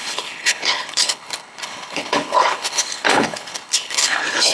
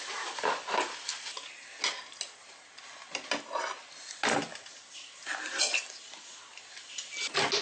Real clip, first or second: second